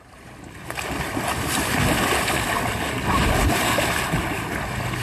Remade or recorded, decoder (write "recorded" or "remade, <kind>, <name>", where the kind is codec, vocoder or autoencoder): recorded